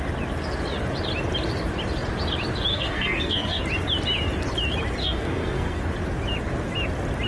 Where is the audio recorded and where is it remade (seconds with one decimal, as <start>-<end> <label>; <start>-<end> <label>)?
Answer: 0.0-2.7 recorded; 2.7-3.6 remade; 3.6-5.0 recorded; 5.0-5.8 remade; 5.8-7.3 recorded